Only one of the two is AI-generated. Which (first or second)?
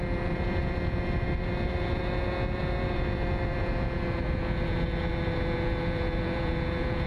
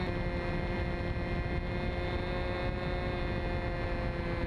first